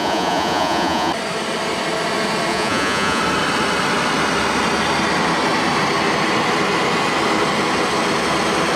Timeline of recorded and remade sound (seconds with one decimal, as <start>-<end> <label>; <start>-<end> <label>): 0.0-1.1 remade; 1.1-2.5 recorded; 2.5-3.2 remade; 3.2-8.8 recorded